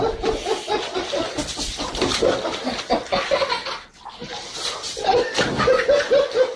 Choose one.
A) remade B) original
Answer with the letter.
B